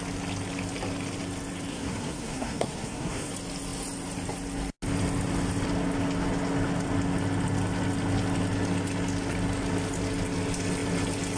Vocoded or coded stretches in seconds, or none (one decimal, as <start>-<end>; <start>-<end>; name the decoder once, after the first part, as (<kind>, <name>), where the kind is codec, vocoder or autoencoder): 1.7-3.3 (codec, SNAC)